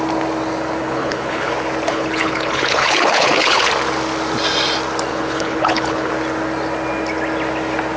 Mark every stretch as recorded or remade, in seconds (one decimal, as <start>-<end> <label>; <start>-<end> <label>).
0.0-0.8 recorded; 0.8-1.5 remade; 1.5-1.9 recorded; 1.9-3.7 remade; 3.7-5.1 recorded; 5.1-6.1 remade; 6.1-8.0 recorded